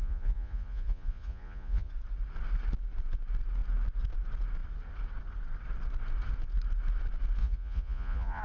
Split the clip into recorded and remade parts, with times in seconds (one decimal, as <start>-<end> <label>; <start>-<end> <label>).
0.0-1.9 remade; 1.9-7.4 recorded; 7.4-8.4 remade